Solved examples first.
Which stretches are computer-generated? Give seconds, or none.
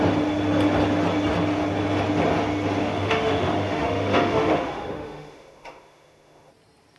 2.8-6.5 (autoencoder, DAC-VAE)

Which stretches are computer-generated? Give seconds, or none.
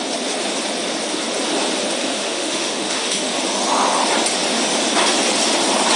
2.0-3.3 (autoencoder, DAC-VAE)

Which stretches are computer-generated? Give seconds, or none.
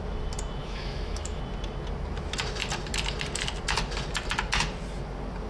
0.6-1.4 (autoencoder, DAC-VAE)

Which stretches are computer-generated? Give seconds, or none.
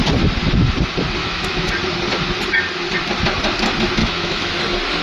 1.2-1.7 (autoencoder, DAC-VAE); 4.0-4.6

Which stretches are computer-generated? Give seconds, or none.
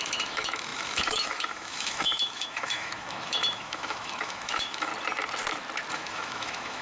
0.0-4.9 (autoencoder, DAC-VAE); 5.9-6.8